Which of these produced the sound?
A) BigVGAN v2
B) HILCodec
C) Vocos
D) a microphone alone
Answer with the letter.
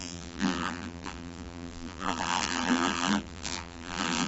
A